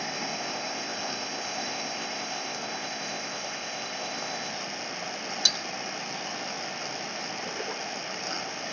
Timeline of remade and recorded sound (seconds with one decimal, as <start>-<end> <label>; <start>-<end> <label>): 0.0-4.5 remade; 4.5-8.7 recorded